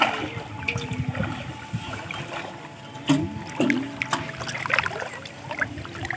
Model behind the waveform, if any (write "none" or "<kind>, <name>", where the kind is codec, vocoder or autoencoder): none